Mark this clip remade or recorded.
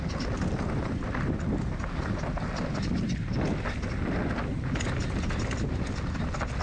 recorded